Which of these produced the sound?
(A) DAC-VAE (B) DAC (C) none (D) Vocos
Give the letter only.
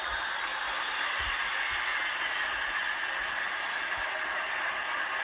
C